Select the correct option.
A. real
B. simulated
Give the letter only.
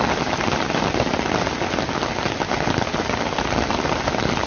A